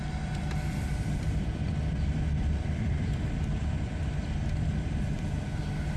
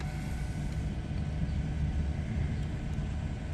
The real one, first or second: second